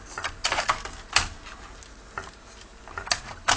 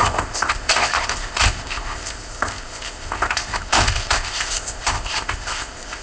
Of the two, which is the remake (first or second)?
second